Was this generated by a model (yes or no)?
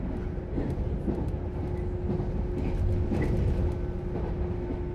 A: no